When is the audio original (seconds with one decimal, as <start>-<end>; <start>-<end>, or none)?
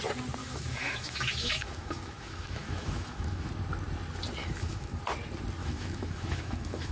0.0-0.4; 3.5-4.4; 5.0-5.6